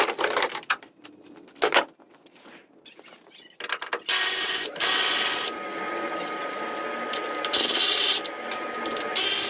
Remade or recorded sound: recorded